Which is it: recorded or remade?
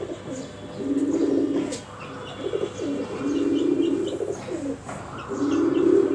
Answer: recorded